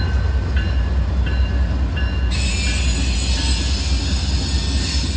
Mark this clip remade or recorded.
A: recorded